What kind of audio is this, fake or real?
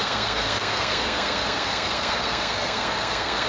fake